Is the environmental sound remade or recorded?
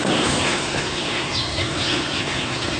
remade